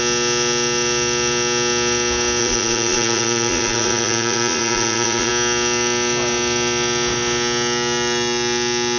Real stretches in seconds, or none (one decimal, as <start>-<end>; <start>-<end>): 0.0-2.4; 5.3-9.0